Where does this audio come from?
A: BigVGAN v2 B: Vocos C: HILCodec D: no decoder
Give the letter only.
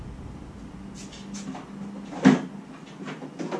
D